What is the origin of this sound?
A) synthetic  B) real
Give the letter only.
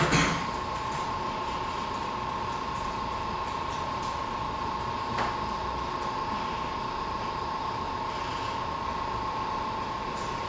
B